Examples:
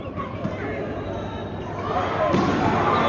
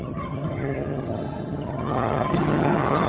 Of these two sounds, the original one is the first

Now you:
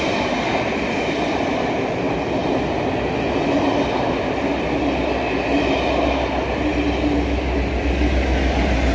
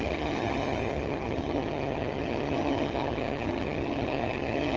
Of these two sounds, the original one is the first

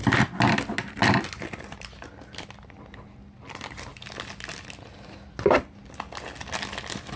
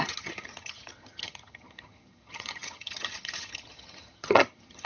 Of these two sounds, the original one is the first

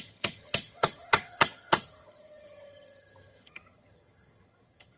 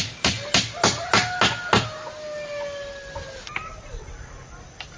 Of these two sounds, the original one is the second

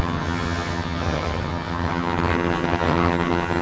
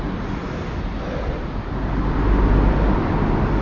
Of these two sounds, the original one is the second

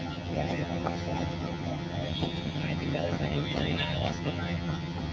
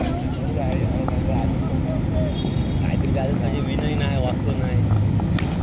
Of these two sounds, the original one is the second